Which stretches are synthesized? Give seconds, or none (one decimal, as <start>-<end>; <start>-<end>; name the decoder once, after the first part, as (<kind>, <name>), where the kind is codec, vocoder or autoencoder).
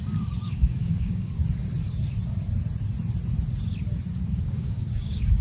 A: 0.0-1.4 (codec, DAC); 4.2-5.4